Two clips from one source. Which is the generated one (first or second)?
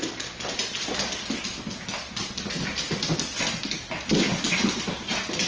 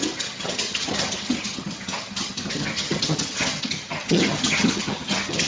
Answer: second